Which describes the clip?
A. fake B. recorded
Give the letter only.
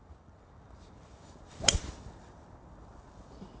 A